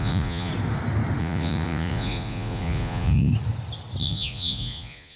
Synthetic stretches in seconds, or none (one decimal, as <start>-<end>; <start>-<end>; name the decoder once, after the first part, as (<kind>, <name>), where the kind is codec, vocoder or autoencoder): 0.0-0.5 (vocoder, Vocos); 1.2-3.3; 4.0-5.2